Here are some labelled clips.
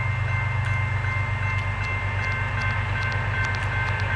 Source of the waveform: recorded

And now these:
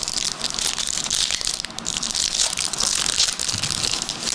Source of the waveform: recorded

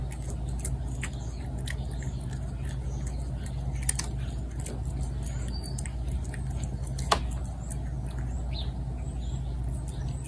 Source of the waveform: recorded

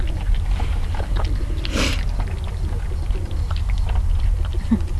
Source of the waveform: recorded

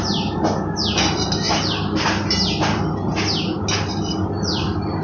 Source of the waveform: recorded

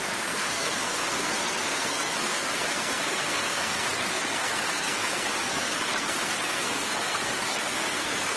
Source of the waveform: remade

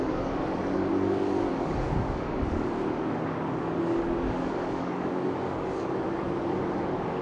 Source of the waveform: remade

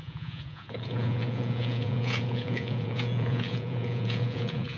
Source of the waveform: remade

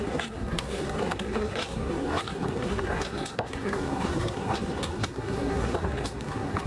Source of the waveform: remade